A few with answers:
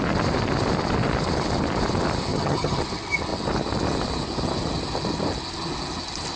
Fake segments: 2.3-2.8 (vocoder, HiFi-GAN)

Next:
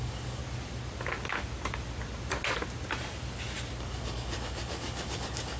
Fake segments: 0.0-0.4 (codec, DAC); 3.8-5.6

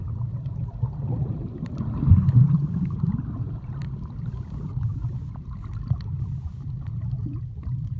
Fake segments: 2.1-5.6 (vocoder, BigVGAN v2)